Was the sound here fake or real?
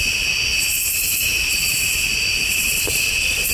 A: real